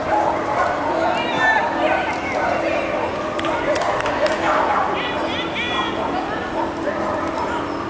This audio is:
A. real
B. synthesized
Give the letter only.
A